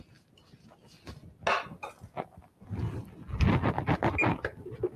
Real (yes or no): yes